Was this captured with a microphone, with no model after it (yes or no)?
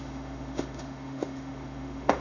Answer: no